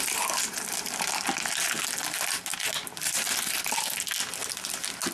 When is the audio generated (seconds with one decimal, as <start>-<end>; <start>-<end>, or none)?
none